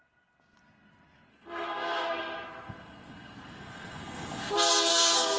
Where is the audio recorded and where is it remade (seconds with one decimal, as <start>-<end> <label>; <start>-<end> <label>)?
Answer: 0.0-1.3 recorded; 1.3-4.5 remade; 4.5-4.9 recorded; 4.9-5.4 remade